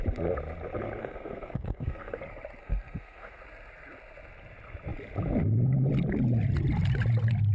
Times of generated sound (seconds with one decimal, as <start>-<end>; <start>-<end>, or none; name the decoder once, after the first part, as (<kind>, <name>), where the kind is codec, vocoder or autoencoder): 1.0-2.2 (codec, SNAC); 2.6-3.4

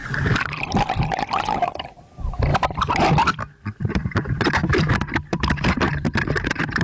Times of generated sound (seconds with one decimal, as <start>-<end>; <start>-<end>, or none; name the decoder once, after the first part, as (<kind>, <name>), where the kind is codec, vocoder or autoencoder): 0.0-6.8 (vocoder, BigVGAN v2)

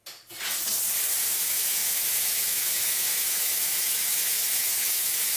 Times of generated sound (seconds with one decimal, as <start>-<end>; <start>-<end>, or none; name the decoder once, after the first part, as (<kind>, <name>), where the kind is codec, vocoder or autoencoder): 1.3-5.4 (autoencoder, DAC-VAE)